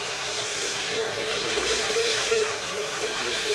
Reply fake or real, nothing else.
fake